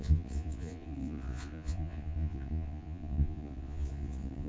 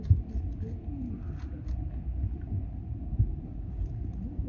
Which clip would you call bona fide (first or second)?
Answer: second